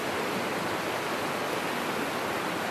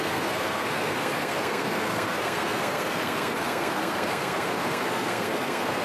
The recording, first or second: first